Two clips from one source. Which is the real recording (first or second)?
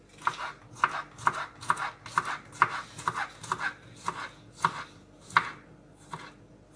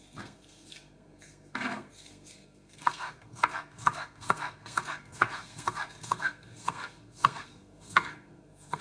first